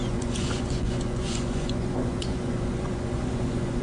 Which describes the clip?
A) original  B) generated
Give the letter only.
B